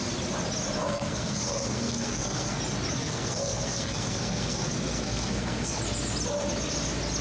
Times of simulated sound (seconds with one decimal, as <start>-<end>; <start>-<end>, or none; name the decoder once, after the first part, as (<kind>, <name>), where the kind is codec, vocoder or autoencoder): 0.8-2.6 (codec, SNAC); 3.0-5.8